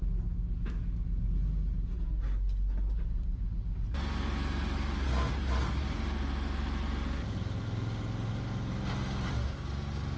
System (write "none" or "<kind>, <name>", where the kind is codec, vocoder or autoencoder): none